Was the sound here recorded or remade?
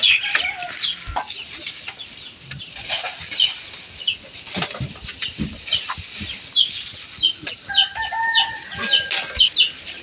recorded